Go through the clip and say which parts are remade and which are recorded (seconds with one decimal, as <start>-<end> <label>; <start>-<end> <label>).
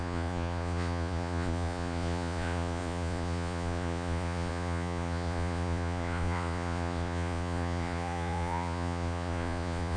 0.0-10.0 remade